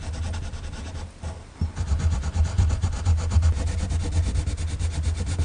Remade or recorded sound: recorded